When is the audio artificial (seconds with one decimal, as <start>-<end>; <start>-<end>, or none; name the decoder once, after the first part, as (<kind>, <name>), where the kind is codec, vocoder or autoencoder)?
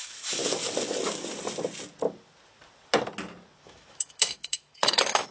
0.0-0.4 (autoencoder, DAC-VAE); 3.6-5.3